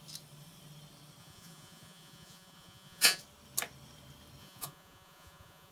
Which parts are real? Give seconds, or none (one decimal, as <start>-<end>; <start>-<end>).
0.0-1.2; 3.2-4.4